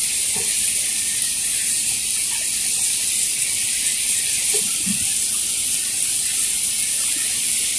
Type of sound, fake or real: real